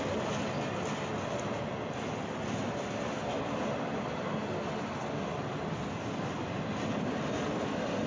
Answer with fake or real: real